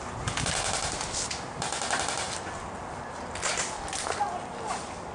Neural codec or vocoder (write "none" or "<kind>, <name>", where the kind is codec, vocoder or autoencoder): none